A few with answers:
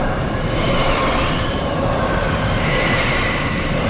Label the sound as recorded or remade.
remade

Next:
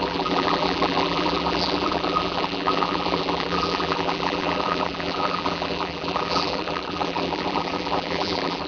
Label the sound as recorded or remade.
remade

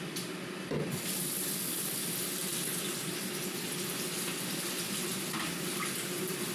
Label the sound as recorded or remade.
recorded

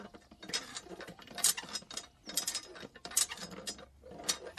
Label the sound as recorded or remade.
recorded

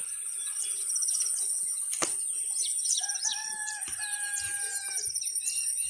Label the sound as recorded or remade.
remade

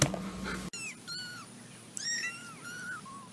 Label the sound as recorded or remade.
recorded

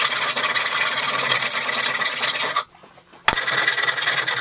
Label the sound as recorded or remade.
recorded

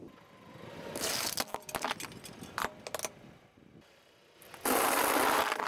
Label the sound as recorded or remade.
recorded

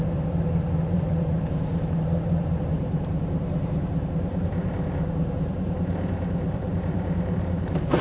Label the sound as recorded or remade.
remade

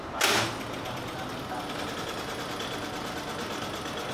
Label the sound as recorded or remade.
recorded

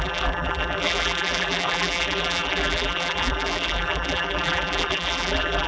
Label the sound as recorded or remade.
remade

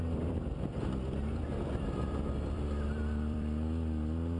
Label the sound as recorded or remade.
remade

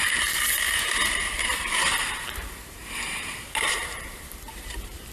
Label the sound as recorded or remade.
remade